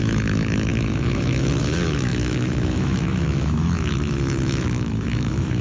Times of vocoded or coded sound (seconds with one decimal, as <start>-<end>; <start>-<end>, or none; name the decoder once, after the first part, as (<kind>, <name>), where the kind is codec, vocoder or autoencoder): 0.0-5.6 (autoencoder, DAC-VAE)